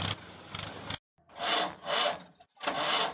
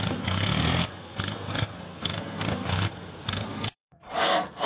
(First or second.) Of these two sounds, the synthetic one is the second